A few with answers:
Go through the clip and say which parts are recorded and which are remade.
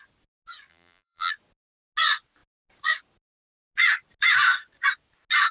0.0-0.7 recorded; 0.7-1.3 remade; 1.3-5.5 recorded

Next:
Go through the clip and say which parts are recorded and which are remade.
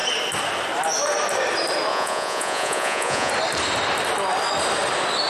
0.0-1.9 recorded; 1.9-3.3 remade; 3.3-5.3 recorded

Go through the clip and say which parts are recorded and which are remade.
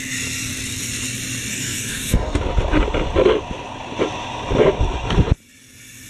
0.0-1.5 recorded; 1.5-2.4 remade; 2.4-6.1 recorded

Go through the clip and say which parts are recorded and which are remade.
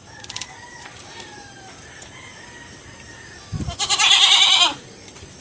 0.0-5.4 recorded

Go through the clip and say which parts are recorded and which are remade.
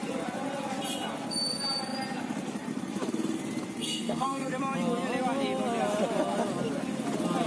0.0-3.8 recorded; 3.8-4.5 remade; 4.5-7.5 recorded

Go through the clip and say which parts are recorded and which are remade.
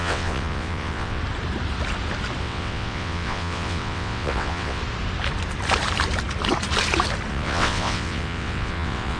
0.0-1.2 remade; 1.2-2.4 recorded; 2.4-4.8 remade; 4.8-7.3 recorded; 7.3-9.2 remade